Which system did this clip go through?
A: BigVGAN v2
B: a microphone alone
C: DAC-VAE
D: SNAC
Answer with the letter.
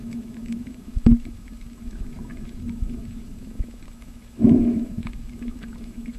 C